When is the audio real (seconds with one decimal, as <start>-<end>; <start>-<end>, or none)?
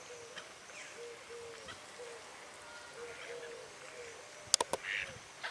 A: 0.0-5.5